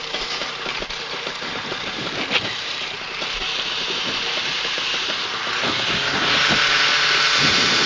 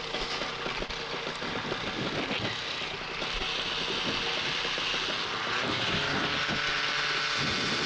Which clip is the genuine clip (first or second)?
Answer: second